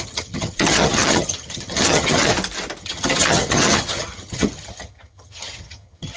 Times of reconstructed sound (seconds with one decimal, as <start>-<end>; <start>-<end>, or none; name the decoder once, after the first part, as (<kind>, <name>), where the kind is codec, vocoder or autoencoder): 0.0-2.3 (vocoder, HiFi-GAN); 2.8-6.2